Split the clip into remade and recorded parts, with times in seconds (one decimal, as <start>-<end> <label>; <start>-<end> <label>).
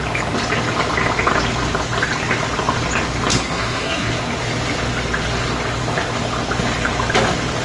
0.0-3.3 recorded; 3.3-4.1 remade; 4.1-7.6 recorded